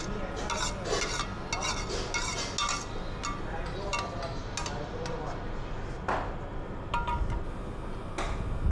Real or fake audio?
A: real